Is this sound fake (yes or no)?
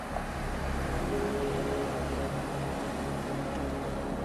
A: no